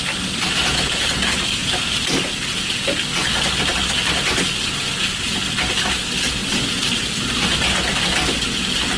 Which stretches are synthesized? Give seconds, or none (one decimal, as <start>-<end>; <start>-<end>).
1.6-4.7; 6.4-7.8